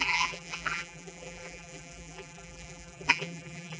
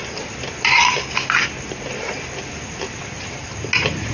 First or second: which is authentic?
second